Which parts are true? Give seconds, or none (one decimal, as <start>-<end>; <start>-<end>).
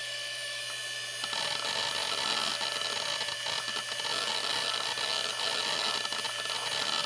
0.6-7.1